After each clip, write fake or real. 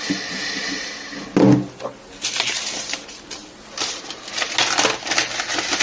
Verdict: real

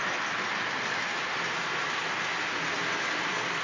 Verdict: real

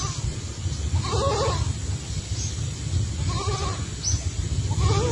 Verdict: real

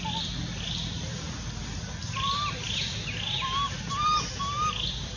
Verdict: real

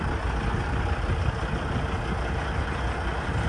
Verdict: real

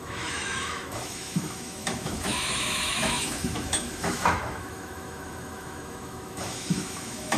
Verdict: fake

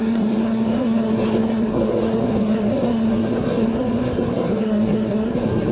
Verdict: fake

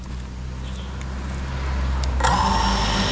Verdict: real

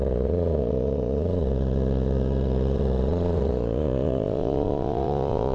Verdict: fake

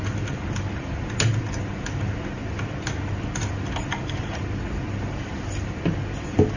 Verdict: real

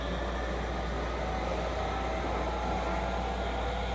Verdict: real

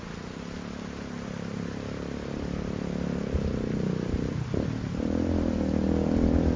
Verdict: real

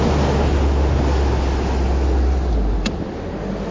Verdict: real